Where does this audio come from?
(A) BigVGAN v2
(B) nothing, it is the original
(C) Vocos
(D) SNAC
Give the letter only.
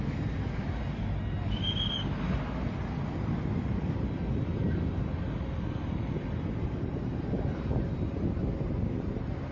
B